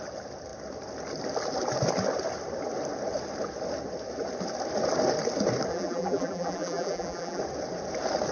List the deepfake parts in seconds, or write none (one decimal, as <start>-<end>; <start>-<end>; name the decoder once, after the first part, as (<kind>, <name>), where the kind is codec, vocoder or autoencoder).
5.7-7.4 (vocoder, BigVGAN v2)